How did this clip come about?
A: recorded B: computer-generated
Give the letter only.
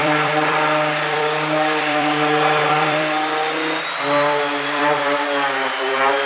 B